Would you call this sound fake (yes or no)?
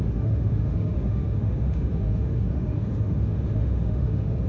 yes